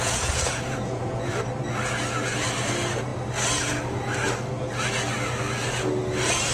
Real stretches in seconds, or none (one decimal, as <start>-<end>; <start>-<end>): 1.3-6.5